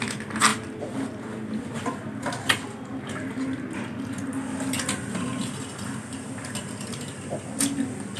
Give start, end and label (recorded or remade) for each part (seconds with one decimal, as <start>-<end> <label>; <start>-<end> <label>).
0.0-8.2 recorded